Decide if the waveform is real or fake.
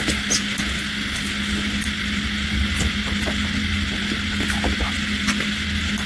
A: real